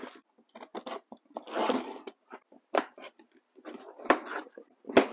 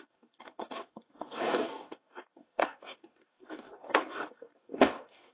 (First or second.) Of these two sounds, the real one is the first